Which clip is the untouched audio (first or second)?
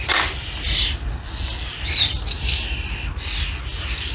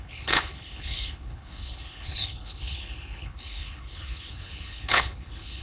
first